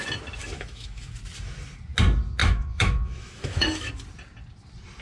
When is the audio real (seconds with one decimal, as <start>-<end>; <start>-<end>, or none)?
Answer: 0.0-0.4; 1.1-2.4; 3.9-5.0